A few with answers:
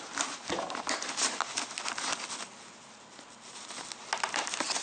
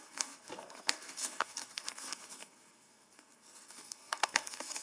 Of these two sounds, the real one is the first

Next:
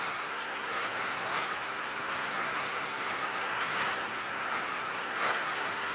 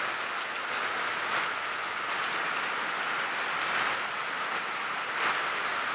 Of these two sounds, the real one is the second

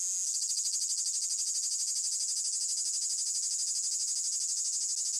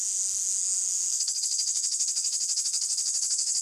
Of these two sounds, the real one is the first